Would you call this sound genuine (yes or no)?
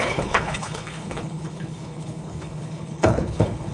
no